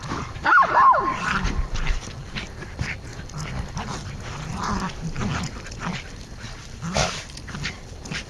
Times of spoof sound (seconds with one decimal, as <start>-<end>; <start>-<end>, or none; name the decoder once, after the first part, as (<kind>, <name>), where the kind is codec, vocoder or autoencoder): 0.0-3.1 (vocoder, BigVGAN v2); 4.8-5.3; 6.6-8.3